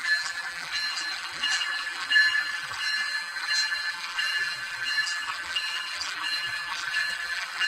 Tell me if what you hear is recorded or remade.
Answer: remade